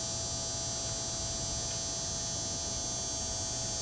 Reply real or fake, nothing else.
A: real